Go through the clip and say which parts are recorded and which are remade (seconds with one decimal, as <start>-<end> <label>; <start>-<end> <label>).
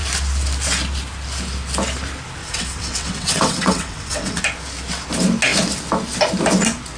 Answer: 0.0-2.4 recorded; 2.4-4.4 remade; 4.4-7.0 recorded